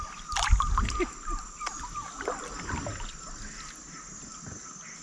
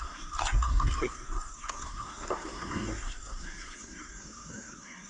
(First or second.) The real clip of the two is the first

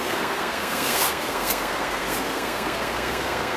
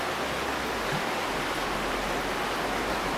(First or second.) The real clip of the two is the second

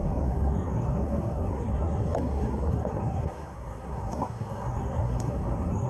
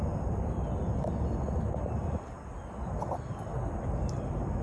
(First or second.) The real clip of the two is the second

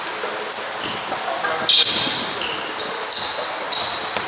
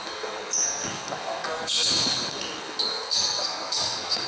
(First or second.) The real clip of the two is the first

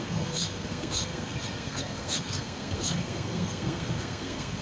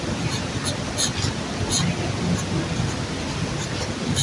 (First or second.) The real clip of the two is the second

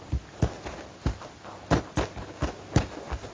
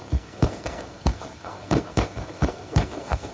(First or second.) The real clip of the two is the first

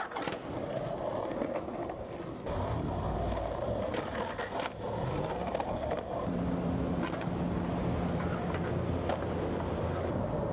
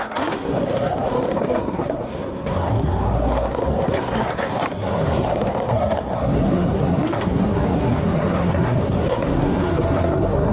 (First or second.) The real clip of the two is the first